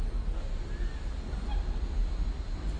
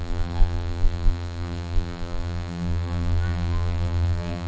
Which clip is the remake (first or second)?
second